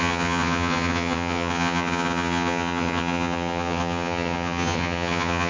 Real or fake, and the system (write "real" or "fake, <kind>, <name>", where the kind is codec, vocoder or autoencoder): fake, vocoder, HiFi-GAN